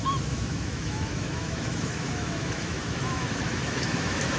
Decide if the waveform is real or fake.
fake